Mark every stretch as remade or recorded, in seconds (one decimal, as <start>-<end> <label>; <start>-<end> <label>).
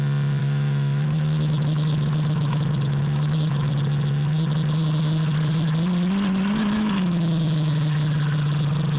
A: 0.0-0.4 recorded; 0.4-3.7 remade; 3.7-6.6 recorded; 6.6-7.7 remade; 7.7-9.0 recorded